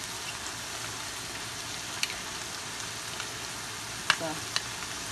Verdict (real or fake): real